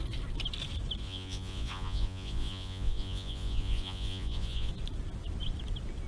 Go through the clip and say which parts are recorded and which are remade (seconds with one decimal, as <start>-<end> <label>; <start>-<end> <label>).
0.0-1.0 recorded; 1.0-4.7 remade; 4.7-6.1 recorded